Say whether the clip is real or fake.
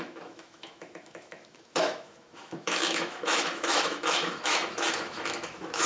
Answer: fake